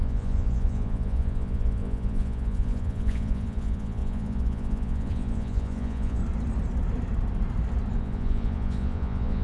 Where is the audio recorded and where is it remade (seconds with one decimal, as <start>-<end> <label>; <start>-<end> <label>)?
0.0-6.2 remade; 6.2-8.0 recorded; 8.0-9.4 remade